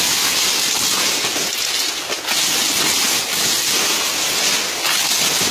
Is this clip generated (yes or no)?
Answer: no